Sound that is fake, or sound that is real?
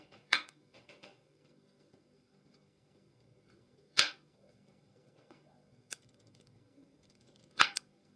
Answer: fake